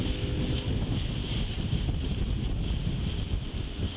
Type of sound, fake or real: real